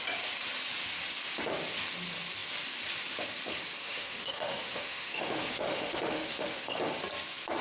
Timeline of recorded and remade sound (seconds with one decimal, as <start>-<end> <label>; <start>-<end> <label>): 0.0-3.8 recorded; 3.8-6.8 remade; 6.8-7.6 recorded